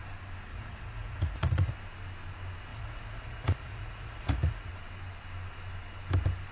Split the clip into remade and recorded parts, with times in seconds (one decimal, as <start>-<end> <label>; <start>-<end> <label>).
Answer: 0.0-0.5 recorded; 0.5-1.7 remade; 1.7-2.7 recorded; 2.7-4.7 remade; 4.7-6.5 recorded